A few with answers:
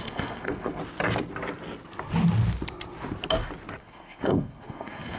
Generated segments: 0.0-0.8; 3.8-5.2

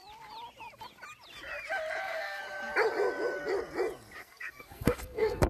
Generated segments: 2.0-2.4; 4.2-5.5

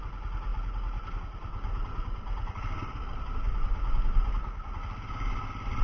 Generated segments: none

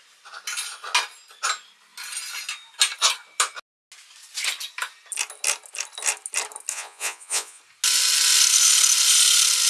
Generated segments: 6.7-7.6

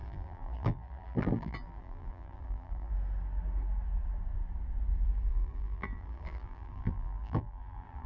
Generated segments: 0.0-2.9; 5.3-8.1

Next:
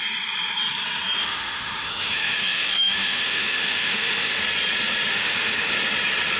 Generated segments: 1.2-4.4; 5.1-5.7

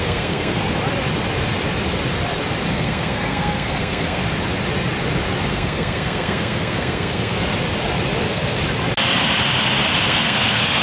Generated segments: 0.0-0.6; 2.7-4.2; 5.5-7.4; 8.2-8.6; 10.0-10.8